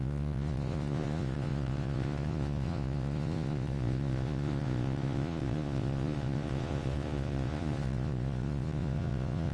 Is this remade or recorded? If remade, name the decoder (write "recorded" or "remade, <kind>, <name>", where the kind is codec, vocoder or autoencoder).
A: remade, vocoder, Vocos